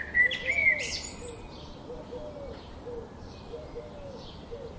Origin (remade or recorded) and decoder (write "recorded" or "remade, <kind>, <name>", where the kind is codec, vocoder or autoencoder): recorded